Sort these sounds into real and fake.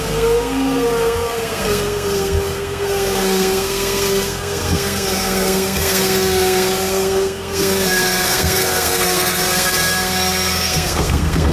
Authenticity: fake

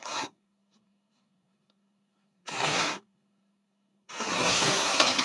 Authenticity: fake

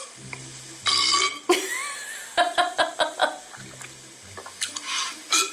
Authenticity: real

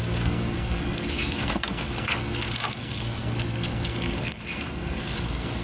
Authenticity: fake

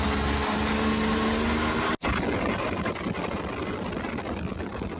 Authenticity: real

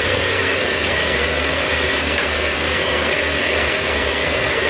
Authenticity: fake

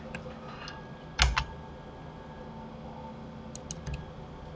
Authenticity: real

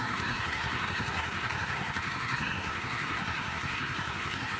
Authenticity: fake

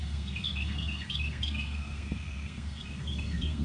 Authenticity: fake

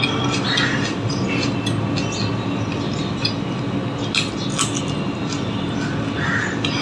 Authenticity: real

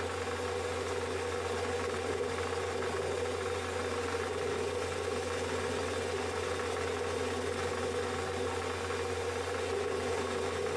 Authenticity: real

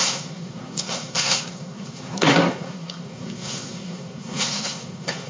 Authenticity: fake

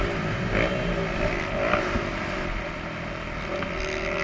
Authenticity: real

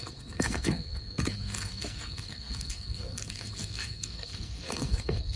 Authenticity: fake